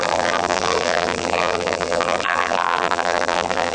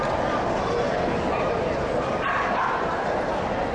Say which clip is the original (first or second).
second